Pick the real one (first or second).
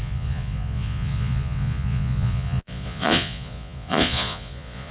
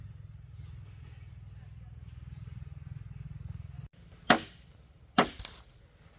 second